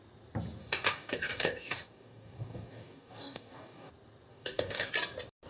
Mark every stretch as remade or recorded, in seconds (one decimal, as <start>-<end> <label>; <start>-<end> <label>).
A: 0.0-0.6 recorded; 0.6-3.9 remade; 3.9-4.3 recorded; 4.3-4.9 remade; 4.9-5.5 recorded